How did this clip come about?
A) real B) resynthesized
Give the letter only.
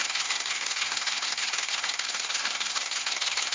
B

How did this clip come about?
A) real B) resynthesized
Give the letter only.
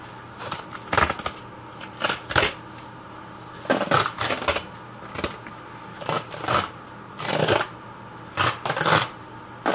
A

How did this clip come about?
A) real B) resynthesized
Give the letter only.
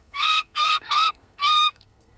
B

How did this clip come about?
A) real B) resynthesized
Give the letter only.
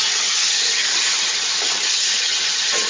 B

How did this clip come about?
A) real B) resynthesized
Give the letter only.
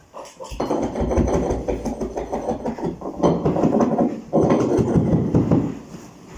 A